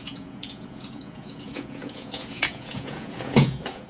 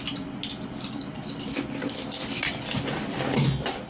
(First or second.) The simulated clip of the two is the first